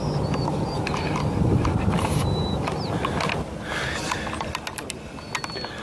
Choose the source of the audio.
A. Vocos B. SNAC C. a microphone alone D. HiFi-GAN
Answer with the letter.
C